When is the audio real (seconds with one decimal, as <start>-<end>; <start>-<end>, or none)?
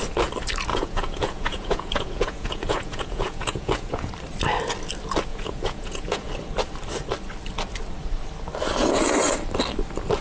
0.0-0.7; 4.1-5.3; 6.3-10.2